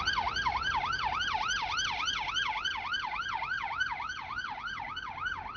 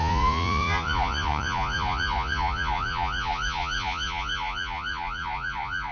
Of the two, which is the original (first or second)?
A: first